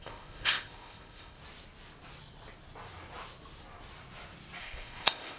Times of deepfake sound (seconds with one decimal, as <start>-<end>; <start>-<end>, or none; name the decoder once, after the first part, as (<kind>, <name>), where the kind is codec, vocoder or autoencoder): 0.0-1.4 (codec, ZipCodec); 4.6-5.4